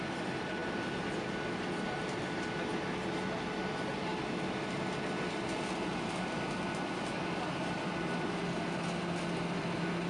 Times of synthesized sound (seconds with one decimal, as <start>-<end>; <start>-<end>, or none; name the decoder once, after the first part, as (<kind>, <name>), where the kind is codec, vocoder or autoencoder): none